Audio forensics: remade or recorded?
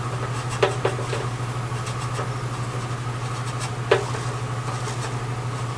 recorded